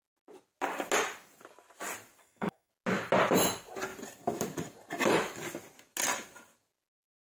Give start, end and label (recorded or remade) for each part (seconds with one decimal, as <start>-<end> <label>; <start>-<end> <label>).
0.0-2.2 recorded; 2.2-2.7 remade; 2.7-7.3 recorded

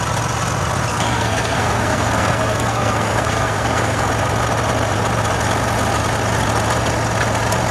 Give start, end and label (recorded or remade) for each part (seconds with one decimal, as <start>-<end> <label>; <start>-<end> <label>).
0.0-0.9 recorded; 0.9-4.1 remade; 4.1-7.7 recorded